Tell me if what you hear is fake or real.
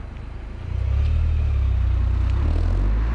real